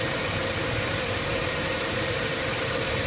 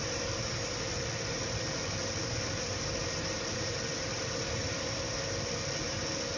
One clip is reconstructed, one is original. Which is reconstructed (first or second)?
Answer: first